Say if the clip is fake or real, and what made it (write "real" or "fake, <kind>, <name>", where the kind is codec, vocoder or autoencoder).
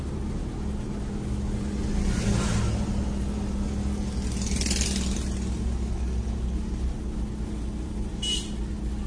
real